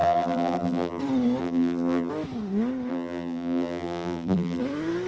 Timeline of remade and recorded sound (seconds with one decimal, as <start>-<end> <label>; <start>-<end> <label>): 0.0-1.0 remade; 1.0-1.4 recorded; 1.4-2.1 remade; 2.1-2.9 recorded; 2.9-4.6 remade; 4.6-5.1 recorded

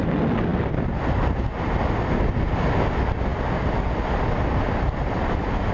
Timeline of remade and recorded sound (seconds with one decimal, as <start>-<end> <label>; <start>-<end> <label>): 0.0-5.7 recorded